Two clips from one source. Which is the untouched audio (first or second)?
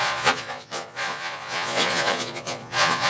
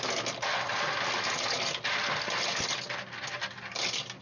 second